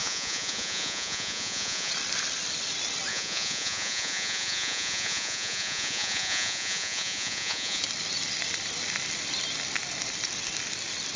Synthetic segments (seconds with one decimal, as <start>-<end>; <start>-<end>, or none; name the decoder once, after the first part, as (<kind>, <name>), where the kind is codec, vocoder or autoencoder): 0.0-1.9 (vocoder, Vocos); 3.1-7.8